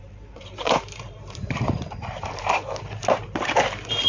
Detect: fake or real fake